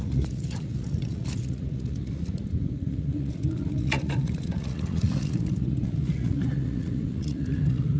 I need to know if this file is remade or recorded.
remade